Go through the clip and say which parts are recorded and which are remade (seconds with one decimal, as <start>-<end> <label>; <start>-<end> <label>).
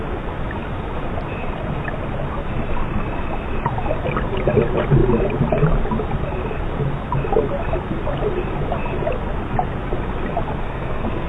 0.0-10.6 recorded; 10.6-11.3 remade